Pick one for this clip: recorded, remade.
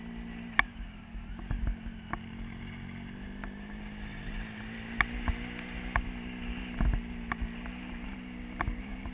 recorded